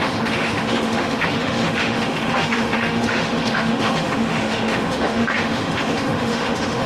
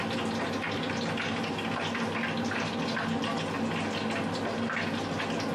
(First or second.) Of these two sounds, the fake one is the first